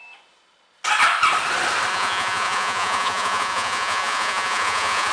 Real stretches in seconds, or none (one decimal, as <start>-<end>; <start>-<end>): 0.0-1.9